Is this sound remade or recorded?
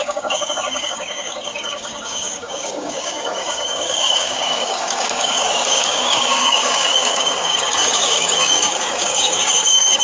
remade